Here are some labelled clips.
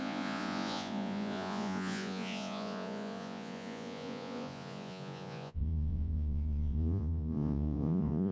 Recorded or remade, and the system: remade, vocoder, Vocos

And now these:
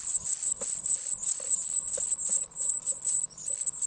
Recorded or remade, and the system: recorded